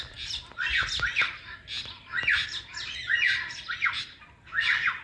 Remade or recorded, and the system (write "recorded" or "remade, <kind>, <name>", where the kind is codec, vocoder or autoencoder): recorded